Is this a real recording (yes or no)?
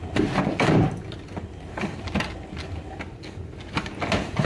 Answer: yes